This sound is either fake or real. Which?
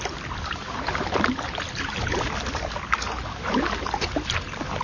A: real